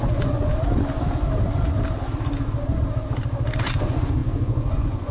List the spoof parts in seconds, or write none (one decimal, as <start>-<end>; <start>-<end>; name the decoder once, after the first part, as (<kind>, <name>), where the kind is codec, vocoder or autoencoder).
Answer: 0.0-0.5 (vocoder, Vocos); 3.6-5.1